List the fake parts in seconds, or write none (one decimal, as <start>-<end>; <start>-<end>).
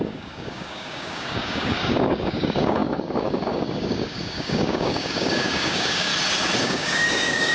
0.0-6.1; 6.6-7.5